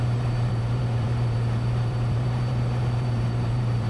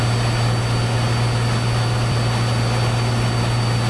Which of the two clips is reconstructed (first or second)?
first